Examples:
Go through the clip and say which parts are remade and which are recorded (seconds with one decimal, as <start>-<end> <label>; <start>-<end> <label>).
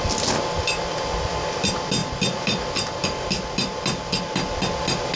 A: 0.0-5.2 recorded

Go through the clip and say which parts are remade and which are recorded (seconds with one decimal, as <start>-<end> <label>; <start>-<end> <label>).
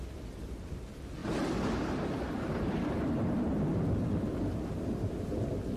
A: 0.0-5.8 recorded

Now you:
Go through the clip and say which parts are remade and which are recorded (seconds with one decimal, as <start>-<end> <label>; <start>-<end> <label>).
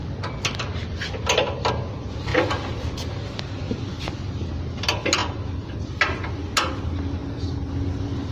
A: 0.0-8.3 recorded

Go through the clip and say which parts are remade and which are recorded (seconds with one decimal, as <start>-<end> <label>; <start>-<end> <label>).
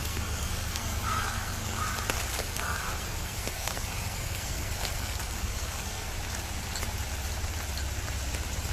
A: 0.0-1.8 remade; 1.8-2.3 recorded; 2.3-6.1 remade; 6.1-8.7 recorded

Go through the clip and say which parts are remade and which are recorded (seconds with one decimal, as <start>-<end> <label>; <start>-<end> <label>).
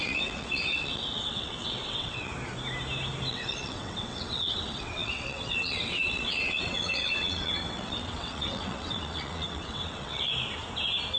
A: 0.0-2.3 remade; 2.3-3.3 recorded; 3.3-10.3 remade; 10.3-11.2 recorded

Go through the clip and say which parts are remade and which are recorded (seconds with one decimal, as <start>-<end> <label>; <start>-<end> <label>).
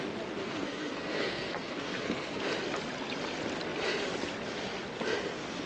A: 0.0-0.4 recorded; 0.4-2.4 remade; 2.4-5.7 recorded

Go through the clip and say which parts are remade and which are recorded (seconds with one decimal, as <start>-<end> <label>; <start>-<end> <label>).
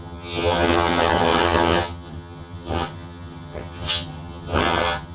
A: 0.0-5.1 remade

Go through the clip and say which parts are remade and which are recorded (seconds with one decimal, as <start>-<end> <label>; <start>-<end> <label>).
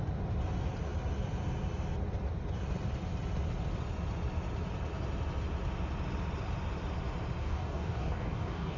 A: 0.0-7.4 recorded; 7.4-8.8 remade